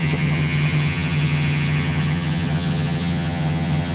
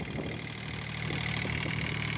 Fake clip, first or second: first